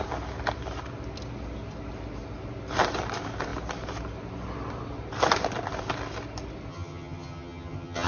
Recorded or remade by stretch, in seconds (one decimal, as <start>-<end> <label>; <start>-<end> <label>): 0.0-6.7 recorded; 6.7-8.1 remade